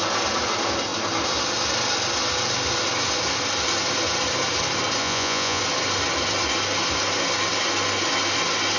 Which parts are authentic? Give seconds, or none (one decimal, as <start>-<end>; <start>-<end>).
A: 0.0-5.0; 5.6-8.8